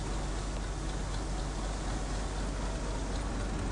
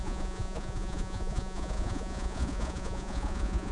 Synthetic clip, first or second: second